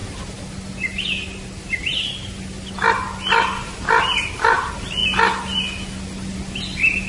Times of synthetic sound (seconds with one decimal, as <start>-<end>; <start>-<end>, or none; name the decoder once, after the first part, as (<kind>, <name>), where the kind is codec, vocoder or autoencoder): none